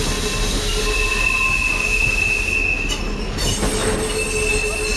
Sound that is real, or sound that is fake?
real